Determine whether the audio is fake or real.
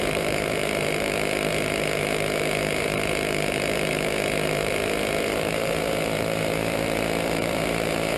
fake